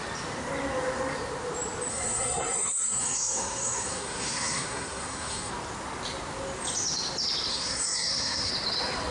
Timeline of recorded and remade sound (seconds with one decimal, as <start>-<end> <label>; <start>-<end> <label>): 0.0-1.9 recorded; 1.9-5.5 remade; 5.5-7.5 recorded; 7.5-8.5 remade; 8.5-9.1 recorded